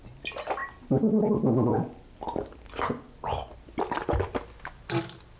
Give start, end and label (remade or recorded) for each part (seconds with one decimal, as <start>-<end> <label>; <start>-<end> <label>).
0.0-5.4 recorded